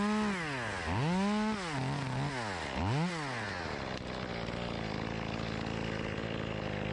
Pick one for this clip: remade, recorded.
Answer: recorded